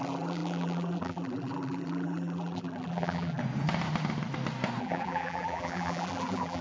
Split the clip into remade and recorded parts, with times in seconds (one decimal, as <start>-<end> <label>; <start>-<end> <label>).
0.0-3.4 remade; 3.4-4.8 recorded; 4.8-6.6 remade